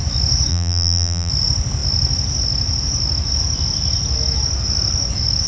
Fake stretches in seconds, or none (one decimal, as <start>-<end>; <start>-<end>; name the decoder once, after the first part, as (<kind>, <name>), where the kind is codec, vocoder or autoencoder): 0.5-1.3 (vocoder, BigVGAN v2)